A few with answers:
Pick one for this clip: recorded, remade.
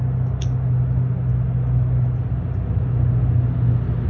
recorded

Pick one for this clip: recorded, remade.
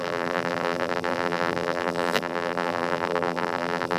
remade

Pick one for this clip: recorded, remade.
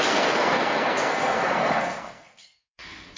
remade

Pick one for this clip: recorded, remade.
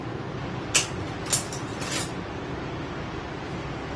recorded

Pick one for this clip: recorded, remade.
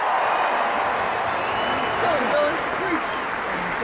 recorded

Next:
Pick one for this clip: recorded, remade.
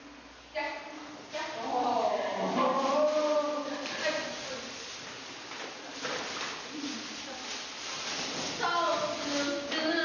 recorded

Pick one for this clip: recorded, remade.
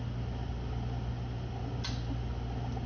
recorded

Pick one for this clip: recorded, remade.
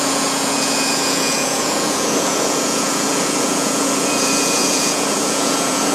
remade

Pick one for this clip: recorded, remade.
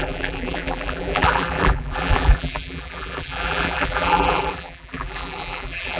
remade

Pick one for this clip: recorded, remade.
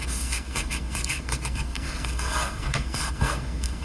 remade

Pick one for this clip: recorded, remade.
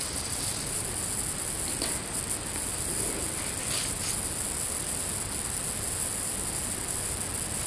recorded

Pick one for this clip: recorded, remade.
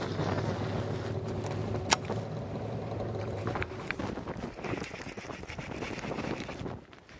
recorded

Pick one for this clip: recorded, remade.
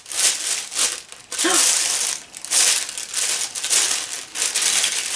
recorded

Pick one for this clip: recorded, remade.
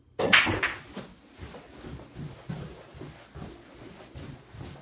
recorded